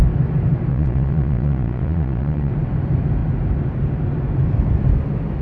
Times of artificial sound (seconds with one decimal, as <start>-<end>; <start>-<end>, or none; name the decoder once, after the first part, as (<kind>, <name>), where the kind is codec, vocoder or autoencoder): 0.7-2.5 (vocoder, Vocos)